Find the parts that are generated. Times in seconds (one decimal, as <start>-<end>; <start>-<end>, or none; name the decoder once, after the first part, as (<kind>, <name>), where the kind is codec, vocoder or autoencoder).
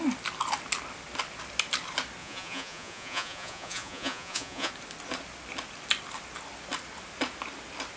2.2-4.7 (vocoder, Vocos)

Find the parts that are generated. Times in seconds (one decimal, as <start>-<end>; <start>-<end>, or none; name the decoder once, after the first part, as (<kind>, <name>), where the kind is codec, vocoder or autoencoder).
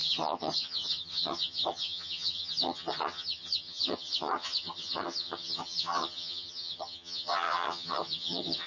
0.0-8.7 (vocoder, HiFi-GAN)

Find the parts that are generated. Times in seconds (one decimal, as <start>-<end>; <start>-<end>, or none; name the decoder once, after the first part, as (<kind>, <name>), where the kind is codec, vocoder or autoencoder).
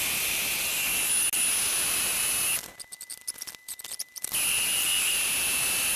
none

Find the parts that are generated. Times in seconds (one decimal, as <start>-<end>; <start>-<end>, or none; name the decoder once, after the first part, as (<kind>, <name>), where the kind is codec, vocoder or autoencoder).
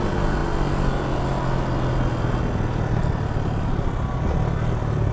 none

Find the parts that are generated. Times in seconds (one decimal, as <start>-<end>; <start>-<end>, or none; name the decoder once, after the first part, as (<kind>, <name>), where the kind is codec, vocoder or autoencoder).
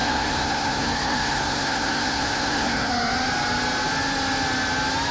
0.0-2.9 (codec, SNAC)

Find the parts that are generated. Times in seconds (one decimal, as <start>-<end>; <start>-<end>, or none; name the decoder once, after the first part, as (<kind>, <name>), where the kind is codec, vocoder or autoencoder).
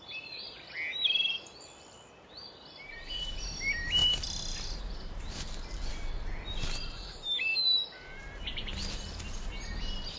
none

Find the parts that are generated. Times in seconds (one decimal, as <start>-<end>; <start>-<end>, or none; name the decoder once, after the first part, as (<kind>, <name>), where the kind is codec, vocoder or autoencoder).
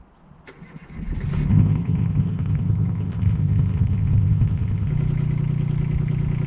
1.5-4.9 (codec, ZipCodec)